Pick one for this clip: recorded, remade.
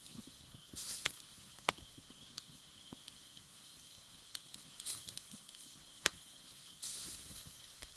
remade